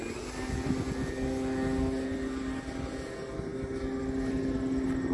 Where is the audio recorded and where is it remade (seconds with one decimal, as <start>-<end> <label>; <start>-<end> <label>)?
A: 0.0-5.1 recorded